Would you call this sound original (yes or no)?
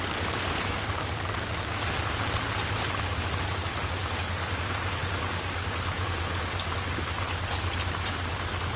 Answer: yes